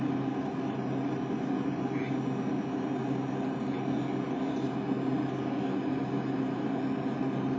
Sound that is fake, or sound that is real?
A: real